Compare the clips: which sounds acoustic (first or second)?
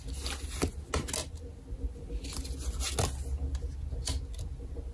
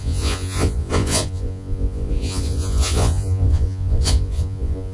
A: first